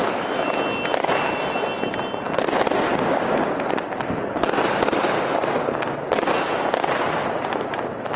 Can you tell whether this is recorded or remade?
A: recorded